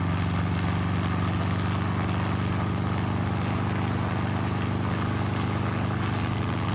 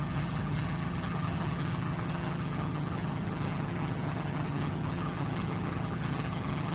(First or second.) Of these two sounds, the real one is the first